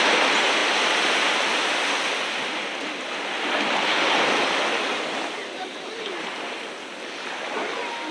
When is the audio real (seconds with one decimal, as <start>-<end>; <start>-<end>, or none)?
0.0-5.4; 6.4-8.1